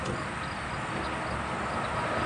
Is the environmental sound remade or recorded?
recorded